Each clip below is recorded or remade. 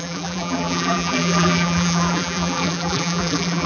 remade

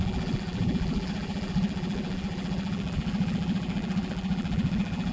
remade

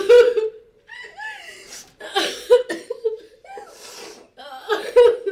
remade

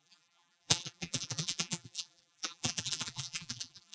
remade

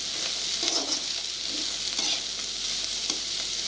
recorded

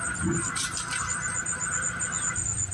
recorded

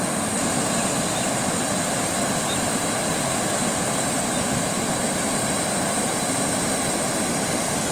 recorded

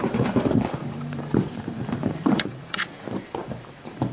remade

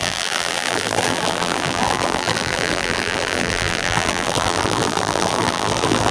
remade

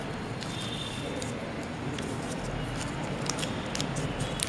remade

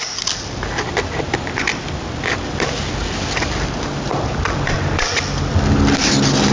remade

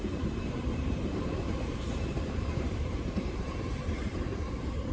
remade